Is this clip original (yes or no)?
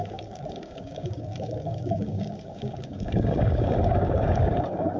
no